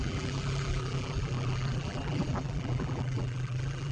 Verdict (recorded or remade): remade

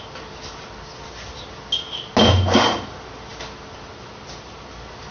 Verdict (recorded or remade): recorded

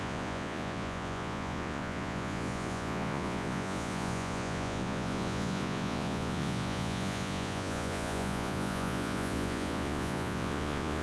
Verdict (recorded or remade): remade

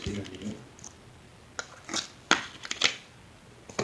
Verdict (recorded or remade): recorded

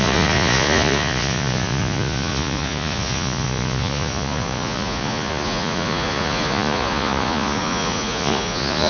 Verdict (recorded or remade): remade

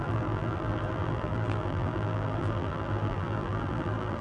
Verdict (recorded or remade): remade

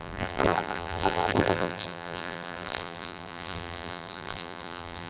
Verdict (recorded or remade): remade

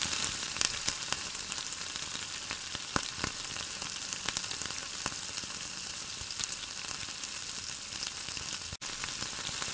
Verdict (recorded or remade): recorded